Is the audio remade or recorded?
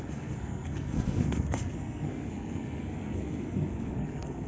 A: remade